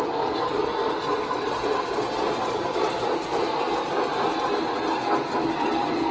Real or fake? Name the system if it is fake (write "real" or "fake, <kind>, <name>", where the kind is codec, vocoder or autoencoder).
real